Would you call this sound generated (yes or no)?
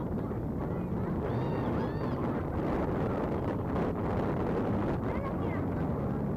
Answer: no